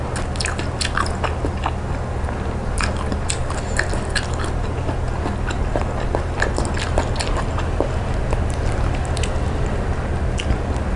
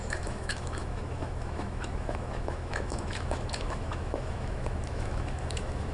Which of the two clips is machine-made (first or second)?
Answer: second